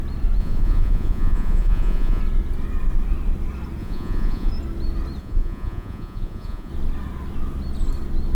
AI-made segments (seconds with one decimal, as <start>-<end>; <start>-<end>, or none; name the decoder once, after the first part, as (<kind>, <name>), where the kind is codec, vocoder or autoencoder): 0.4-2.2 (vocoder, Vocos); 3.8-4.5; 5.2-6.7

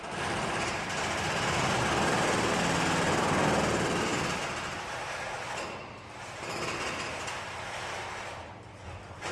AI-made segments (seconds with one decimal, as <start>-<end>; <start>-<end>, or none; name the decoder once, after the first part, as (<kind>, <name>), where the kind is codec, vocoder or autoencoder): none

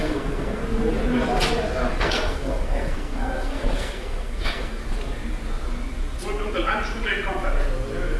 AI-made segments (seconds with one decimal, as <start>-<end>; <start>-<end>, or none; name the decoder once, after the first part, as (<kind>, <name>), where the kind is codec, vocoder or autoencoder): 0.0-0.6 (codec, SNAC); 1.9-4.8

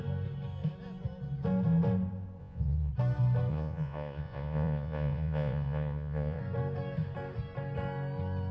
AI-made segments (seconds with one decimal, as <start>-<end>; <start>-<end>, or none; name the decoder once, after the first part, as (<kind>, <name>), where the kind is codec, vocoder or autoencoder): 2.4-2.9 (vocoder, Vocos); 3.5-6.4

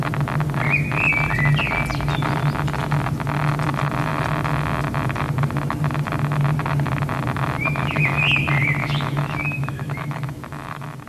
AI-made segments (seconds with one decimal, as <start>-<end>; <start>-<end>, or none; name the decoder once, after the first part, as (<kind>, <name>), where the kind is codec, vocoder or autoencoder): 7.6-8.2 (autoencoder, DAC-VAE); 8.8-10.7

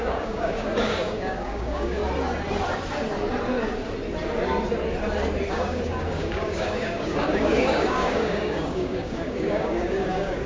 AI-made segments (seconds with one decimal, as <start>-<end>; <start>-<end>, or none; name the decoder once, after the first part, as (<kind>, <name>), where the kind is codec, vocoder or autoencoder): 0.0-2.0 (codec, DAC); 5.5-10.5